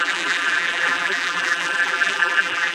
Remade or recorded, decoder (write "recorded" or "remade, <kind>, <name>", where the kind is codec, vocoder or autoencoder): remade, vocoder, BigVGAN v2